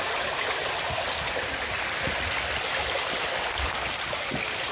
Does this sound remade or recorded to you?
recorded